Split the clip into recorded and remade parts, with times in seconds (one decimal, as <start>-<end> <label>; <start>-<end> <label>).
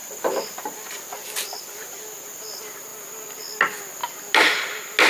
0.0-5.1 recorded